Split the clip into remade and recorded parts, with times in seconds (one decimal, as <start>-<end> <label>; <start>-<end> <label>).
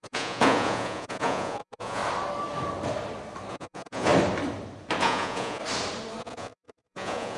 0.0-2.0 remade; 2.0-3.5 recorded; 3.5-4.1 remade; 4.1-5.0 recorded; 5.0-5.6 remade; 5.6-6.2 recorded; 6.2-7.4 remade